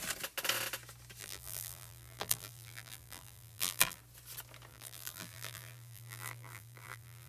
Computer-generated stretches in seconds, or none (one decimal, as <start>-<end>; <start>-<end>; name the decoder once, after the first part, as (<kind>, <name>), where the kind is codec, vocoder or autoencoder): 1.2-4.0 (vocoder, BigVGAN v2); 4.7-7.3